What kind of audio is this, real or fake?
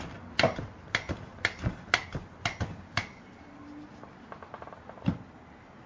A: real